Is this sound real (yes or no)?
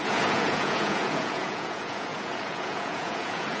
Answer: no